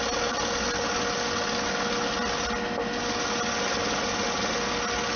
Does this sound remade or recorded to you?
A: recorded